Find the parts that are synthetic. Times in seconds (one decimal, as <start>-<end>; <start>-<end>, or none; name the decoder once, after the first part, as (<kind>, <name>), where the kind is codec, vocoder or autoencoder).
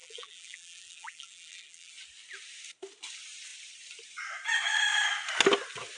0.0-1.9 (vocoder, BigVGAN v2)